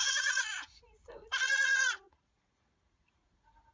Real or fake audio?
fake